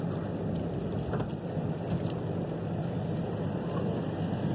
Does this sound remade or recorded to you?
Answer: recorded